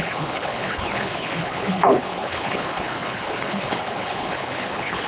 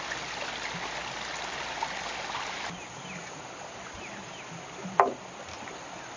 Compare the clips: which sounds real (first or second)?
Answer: second